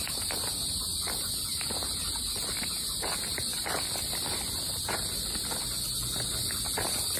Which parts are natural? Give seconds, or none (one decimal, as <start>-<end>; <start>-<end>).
0.0-7.2